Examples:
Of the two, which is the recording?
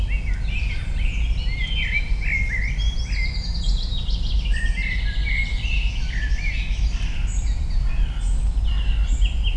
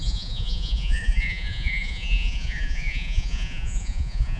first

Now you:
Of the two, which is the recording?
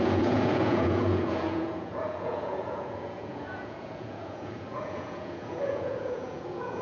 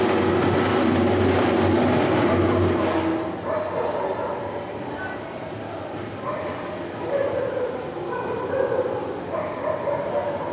second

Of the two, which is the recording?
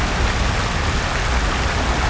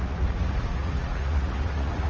first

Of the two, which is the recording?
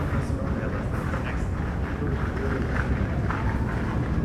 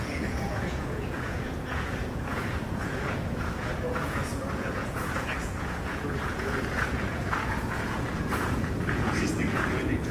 first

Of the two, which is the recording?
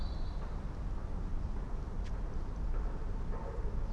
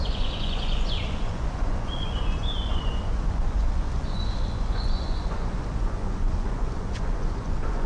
first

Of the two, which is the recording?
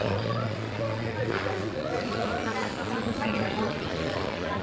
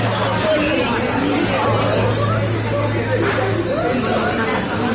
second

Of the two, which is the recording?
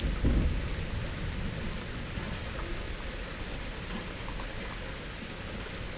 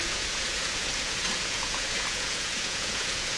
first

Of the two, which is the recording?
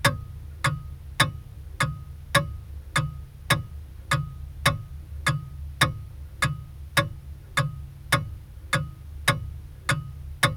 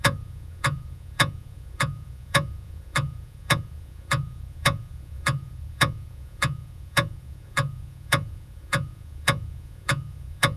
first